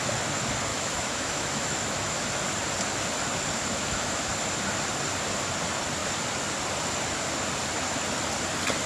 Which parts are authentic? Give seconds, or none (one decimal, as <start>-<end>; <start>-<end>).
0.0-0.7; 2.2-3.7; 4.3-8.9